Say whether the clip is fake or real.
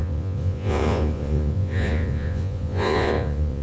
fake